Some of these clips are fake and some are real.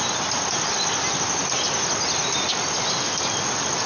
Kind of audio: real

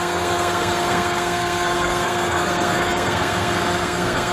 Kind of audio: fake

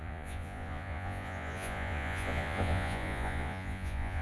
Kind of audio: fake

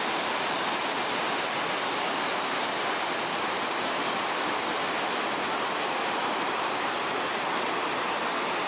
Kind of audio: real